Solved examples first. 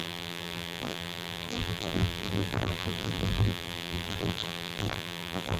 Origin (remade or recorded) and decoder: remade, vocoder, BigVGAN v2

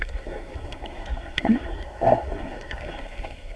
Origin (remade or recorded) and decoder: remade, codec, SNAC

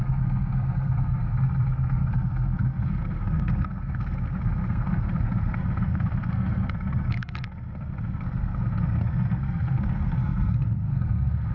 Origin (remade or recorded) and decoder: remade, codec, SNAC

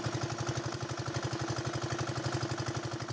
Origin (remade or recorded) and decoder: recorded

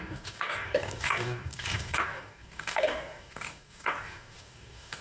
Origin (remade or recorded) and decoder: remade, codec, DAC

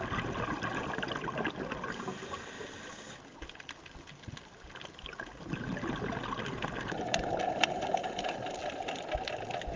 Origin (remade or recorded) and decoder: recorded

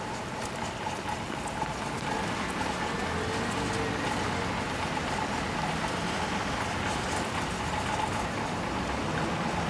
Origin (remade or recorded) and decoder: recorded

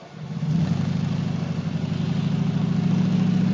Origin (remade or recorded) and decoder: recorded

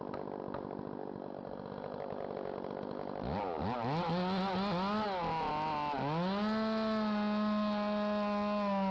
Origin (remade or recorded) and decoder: recorded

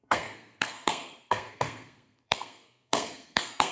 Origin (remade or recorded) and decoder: remade, codec, SNAC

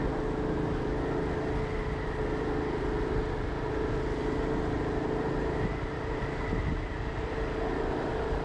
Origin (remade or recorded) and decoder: recorded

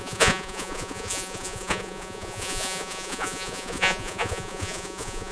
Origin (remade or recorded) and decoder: remade, vocoder, Vocos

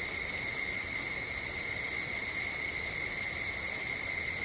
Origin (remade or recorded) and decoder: recorded